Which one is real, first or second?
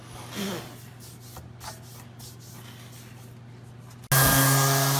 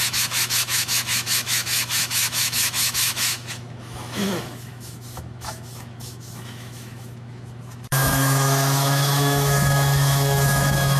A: first